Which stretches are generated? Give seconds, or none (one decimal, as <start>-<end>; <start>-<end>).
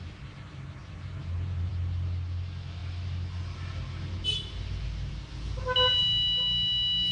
none